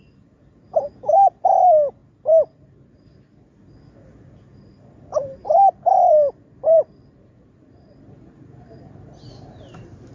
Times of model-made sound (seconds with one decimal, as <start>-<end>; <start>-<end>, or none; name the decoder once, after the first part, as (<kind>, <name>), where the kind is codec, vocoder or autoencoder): 5.4-10.1 (vocoder, BigVGAN v2)